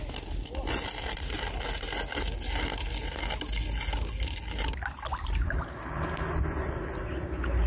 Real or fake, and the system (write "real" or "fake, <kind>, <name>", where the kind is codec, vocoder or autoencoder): real